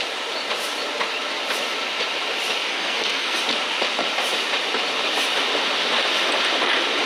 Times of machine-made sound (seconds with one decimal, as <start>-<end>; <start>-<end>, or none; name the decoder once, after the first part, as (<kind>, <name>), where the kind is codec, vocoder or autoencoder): 2.7-3.4 (codec, SNAC)